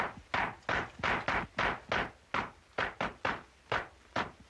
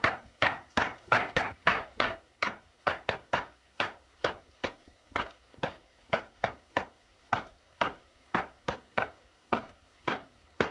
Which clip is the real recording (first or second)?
first